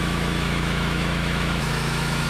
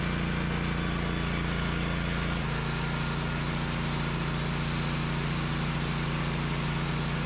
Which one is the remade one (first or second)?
first